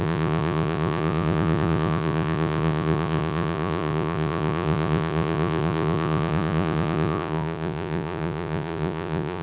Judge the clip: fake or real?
fake